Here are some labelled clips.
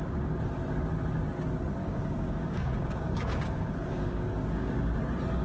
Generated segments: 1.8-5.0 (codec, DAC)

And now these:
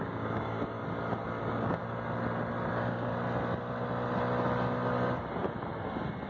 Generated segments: 0.0-0.8 (codec, DAC); 1.4-1.8; 2.7-3.1

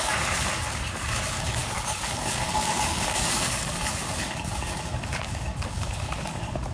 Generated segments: 0.0-6.7 (codec, DAC)